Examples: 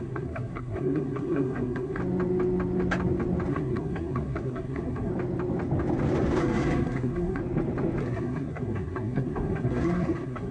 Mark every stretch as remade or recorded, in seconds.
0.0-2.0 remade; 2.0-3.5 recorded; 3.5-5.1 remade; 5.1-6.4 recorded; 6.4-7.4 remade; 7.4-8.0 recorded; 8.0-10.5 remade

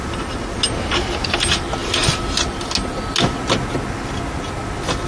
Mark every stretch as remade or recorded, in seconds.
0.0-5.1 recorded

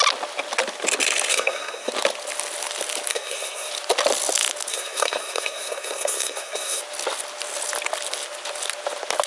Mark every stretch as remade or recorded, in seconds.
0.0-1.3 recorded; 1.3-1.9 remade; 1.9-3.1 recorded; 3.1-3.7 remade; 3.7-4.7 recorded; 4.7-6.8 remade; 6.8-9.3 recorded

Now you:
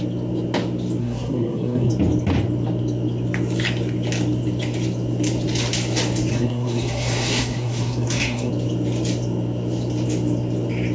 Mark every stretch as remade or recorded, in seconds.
0.0-1.0 recorded; 1.0-1.9 remade; 1.9-6.3 recorded; 6.3-8.5 remade; 8.5-10.9 recorded

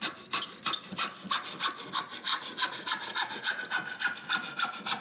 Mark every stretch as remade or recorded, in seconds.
0.0-2.3 recorded; 2.3-3.6 remade; 3.6-5.0 recorded